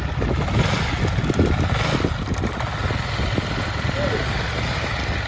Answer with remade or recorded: recorded